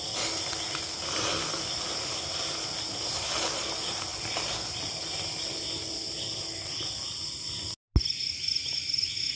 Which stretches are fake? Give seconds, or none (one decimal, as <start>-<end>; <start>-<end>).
none